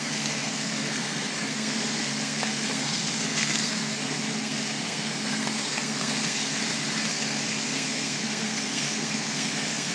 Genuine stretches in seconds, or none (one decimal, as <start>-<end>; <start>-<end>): 6.6-7.1